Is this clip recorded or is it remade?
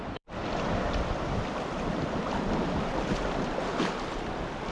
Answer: remade